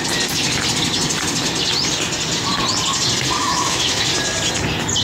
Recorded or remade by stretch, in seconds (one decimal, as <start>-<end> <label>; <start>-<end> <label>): 0.0-3.4 recorded; 3.4-4.0 remade; 4.0-5.0 recorded